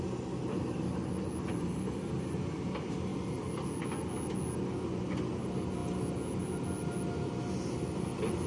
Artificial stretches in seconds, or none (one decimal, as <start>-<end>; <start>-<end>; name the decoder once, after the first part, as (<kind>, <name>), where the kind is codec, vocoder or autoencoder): none